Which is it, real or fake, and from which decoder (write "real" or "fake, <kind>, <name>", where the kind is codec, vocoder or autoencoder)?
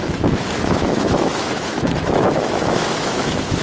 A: fake, autoencoder, DAC-VAE